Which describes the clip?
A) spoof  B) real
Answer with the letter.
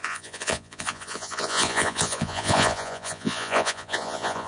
A